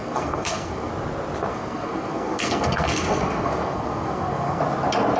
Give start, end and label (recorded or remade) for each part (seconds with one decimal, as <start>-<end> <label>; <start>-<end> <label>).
0.0-0.9 remade; 0.9-1.5 recorded; 1.5-4.6 remade; 4.6-5.2 recorded